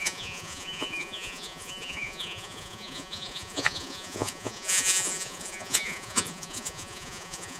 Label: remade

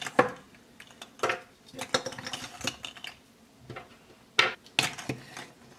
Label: recorded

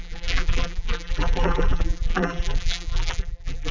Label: remade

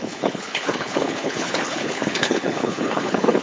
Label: remade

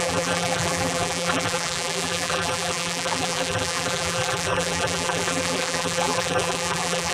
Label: remade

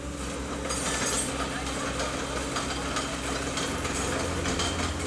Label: recorded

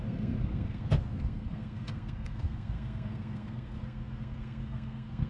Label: remade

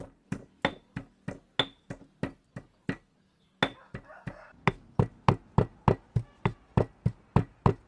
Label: recorded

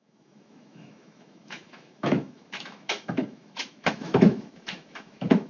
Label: remade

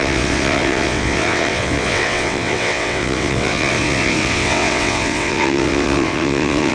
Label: remade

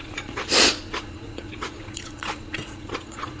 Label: remade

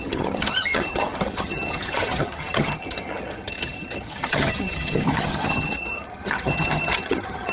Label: remade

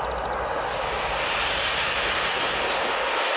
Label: recorded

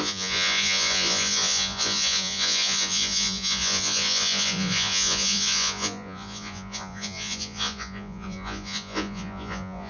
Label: remade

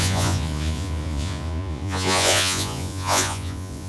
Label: remade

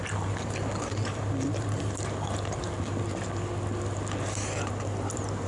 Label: recorded